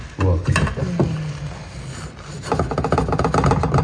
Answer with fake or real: real